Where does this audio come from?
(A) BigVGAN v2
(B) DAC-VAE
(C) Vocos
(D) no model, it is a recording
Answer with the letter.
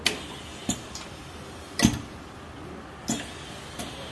D